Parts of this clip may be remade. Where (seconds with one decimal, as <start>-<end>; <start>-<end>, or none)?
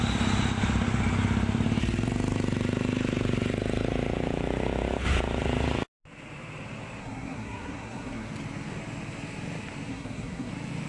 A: 7.0-8.3; 9.9-10.5